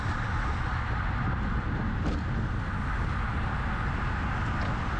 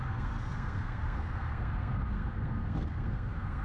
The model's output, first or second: second